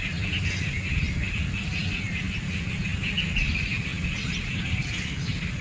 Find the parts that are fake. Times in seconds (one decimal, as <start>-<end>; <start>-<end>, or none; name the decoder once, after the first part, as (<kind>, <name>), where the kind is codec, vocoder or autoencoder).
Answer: 0.0-1.8 (vocoder, BigVGAN v2); 3.5-5.6